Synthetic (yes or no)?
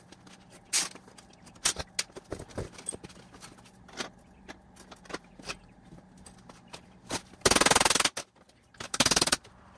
no